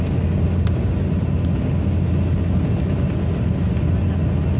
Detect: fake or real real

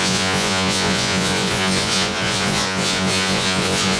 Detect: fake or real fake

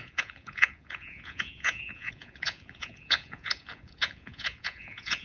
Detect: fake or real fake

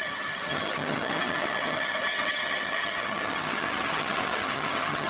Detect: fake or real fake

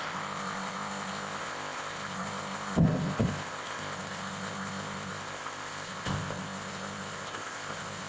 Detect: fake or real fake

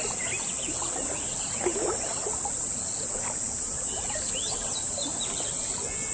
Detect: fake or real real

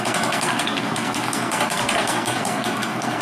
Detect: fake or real fake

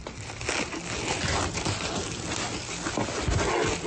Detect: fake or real real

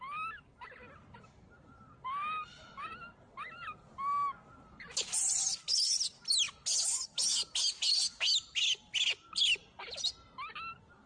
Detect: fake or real real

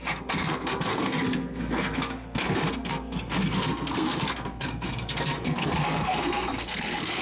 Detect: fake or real fake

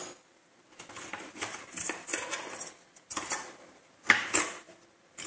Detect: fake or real real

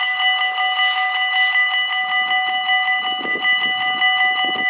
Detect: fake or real real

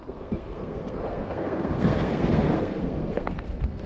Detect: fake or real fake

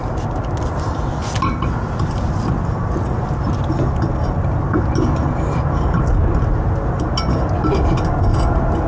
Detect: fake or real real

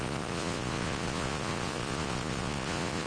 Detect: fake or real fake